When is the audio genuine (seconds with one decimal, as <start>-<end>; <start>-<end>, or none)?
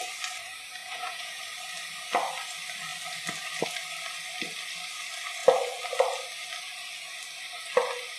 0.0-0.8; 1.4-8.2